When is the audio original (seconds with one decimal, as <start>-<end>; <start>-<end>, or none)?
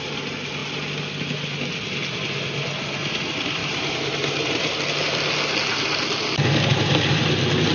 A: 0.0-3.6; 4.7-6.7; 7.3-7.7